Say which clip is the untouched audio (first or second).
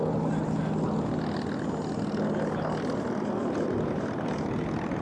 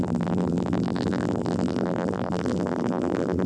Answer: first